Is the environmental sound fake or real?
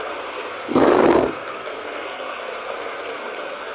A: fake